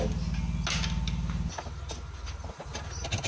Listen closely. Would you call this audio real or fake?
real